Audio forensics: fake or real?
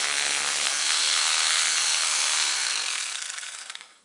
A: fake